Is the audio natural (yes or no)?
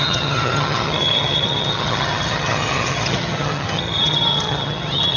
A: no